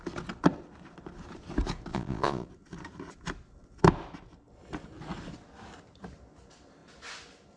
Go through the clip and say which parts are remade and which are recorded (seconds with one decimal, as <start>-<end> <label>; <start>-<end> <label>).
0.0-1.9 recorded; 1.9-2.5 remade; 2.5-7.6 recorded